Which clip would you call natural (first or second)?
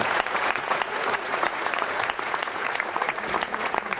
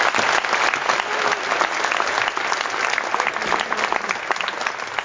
second